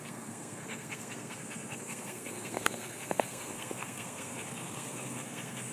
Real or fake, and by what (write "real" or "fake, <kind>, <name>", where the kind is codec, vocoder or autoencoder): fake, codec, SNAC